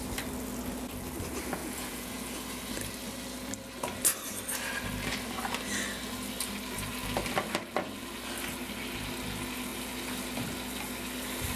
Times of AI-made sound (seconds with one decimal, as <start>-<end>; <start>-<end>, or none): 1.6-2.1